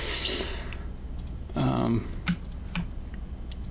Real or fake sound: real